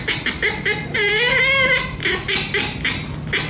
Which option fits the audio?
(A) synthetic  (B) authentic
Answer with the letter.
B